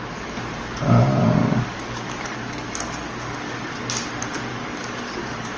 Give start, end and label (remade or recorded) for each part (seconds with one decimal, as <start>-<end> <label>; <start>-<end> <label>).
0.0-1.2 recorded; 1.2-3.7 remade; 3.7-4.5 recorded; 4.5-5.6 remade